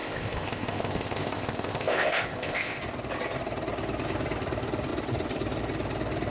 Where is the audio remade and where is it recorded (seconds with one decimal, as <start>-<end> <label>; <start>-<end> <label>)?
0.0-2.8 remade; 2.8-6.3 recorded